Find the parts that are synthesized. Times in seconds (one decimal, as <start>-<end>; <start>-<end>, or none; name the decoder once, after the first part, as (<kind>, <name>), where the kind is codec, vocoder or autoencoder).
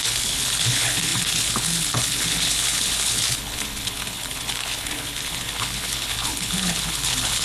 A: 0.0-7.4 (codec, HILCodec)